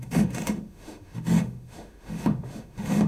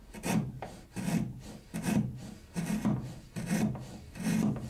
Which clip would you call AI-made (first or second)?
first